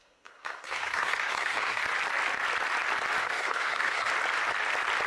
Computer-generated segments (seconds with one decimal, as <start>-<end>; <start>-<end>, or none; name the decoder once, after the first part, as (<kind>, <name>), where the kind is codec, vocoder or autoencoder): 0.0-1.8 (codec, SNAC); 3.2-4.1

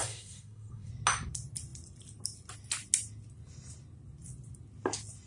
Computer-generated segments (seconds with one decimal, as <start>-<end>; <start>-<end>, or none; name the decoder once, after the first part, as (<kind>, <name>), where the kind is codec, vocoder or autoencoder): 0.0-0.9 (codec, SNAC)

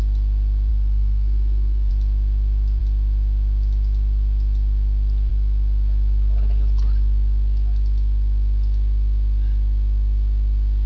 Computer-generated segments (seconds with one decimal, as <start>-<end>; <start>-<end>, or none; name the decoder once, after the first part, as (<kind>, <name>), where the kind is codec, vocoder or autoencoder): 0.7-1.9 (codec, SNAC)

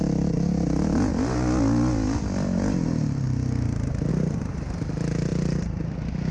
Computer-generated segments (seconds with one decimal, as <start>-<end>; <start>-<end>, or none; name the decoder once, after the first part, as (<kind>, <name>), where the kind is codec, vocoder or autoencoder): none

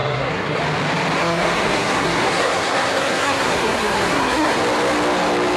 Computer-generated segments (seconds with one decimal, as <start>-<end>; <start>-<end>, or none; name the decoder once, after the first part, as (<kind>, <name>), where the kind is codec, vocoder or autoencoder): 0.0-0.6 (codec, SNAC); 1.2-4.6